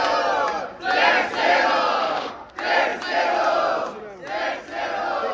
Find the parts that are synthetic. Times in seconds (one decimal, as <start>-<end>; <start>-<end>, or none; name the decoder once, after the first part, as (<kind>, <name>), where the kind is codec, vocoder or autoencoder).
2.0-2.5 (autoencoder, DAC-VAE)